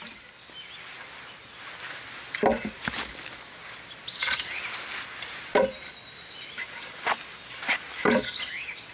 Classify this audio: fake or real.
real